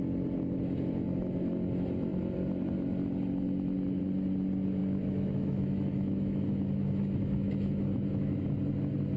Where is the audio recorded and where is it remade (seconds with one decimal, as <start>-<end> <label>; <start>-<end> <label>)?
0.0-4.8 recorded; 4.8-8.4 remade; 8.4-9.2 recorded